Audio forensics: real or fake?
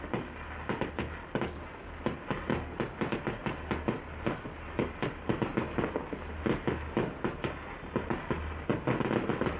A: real